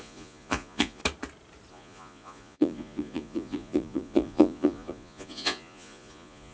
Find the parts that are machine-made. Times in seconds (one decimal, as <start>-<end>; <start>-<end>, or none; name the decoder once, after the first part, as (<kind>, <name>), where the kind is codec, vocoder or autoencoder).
0.0-1.0 (vocoder, Vocos); 1.7-6.5